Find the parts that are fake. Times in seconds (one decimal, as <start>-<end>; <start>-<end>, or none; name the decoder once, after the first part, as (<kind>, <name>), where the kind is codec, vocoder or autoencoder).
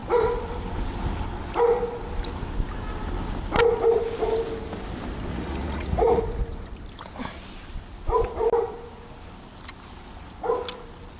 5.3-6.2 (vocoder, Vocos)